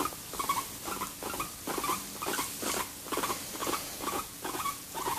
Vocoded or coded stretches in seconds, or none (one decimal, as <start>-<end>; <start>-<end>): 3.6-5.2